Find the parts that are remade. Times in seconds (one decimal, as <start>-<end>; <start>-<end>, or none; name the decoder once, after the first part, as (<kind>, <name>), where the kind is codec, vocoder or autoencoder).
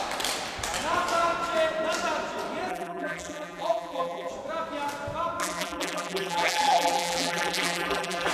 2.7-4.3 (vocoder, BigVGAN v2); 5.4-8.3